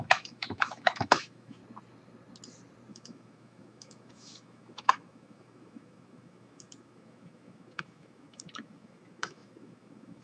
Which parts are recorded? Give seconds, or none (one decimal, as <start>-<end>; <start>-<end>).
1.6-2.9